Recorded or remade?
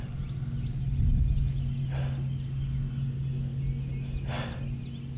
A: recorded